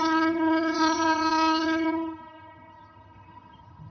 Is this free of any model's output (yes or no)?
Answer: no